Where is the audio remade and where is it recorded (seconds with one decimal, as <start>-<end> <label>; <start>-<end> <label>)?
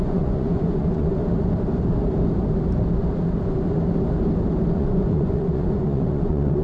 0.0-1.2 remade; 1.2-4.7 recorded; 4.7-6.6 remade